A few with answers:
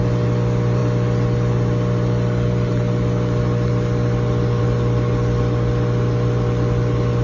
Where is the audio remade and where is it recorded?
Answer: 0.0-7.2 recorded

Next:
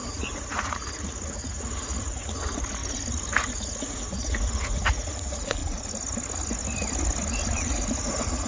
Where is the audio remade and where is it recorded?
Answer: 0.0-2.8 remade; 2.8-3.3 recorded; 3.3-5.6 remade; 5.6-7.6 recorded; 7.6-8.5 remade